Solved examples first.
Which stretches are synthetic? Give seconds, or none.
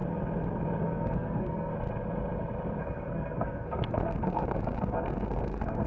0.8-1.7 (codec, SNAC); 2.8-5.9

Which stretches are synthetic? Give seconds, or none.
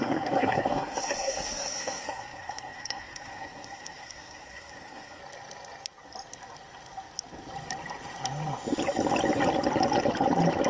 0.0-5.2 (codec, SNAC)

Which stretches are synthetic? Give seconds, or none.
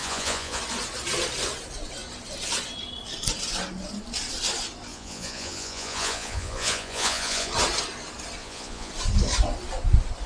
0.0-0.6 (vocoder, Vocos); 4.9-7.5; 8.4-8.9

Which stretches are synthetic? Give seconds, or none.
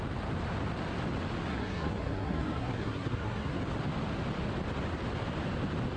1.5-3.6 (codec, SNAC)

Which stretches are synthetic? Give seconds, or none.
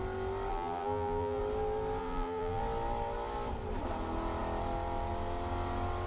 0.5-1.4 (vocoder, BigVGAN v2); 2.0-2.6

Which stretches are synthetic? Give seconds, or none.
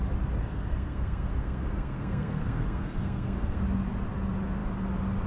0.4-3.6 (codec, SNAC)